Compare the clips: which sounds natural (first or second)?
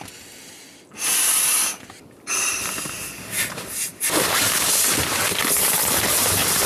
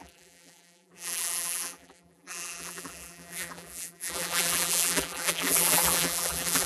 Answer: first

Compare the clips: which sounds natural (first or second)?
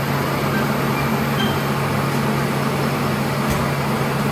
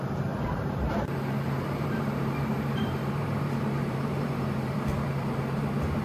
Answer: first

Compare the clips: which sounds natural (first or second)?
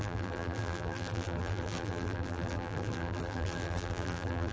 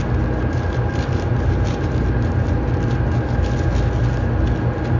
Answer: second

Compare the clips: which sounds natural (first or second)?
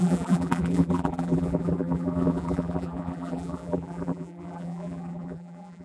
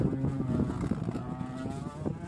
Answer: second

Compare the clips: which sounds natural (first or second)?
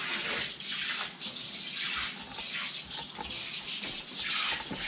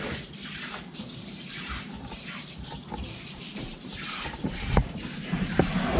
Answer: first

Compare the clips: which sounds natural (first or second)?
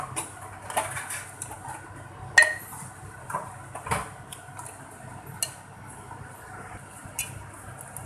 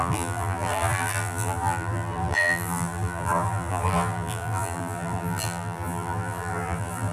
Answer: first